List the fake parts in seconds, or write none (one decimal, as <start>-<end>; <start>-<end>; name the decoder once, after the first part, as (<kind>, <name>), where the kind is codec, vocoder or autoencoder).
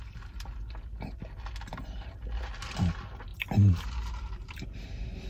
3.3-4.7 (vocoder, BigVGAN v2)